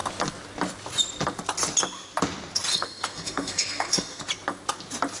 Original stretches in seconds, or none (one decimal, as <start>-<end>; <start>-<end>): 0.0-2.7; 4.2-5.2